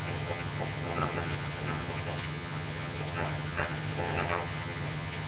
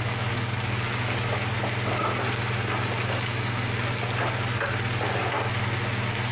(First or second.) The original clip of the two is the second